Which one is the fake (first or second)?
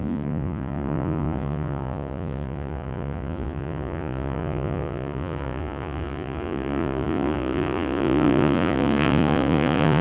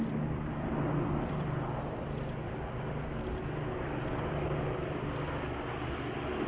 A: first